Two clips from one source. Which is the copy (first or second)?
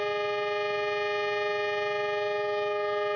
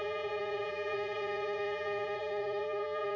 second